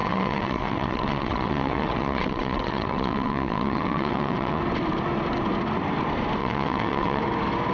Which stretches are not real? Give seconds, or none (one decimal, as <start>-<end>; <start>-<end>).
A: 0.0-4.6; 6.4-7.2